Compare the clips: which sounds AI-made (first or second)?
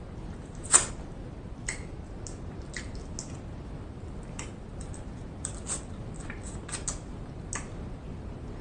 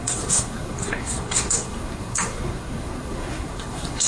second